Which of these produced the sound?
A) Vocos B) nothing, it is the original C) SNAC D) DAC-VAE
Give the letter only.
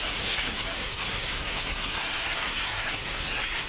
C